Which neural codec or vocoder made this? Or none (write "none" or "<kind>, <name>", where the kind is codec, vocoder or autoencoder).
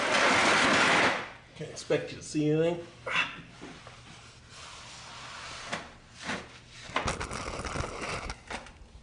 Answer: none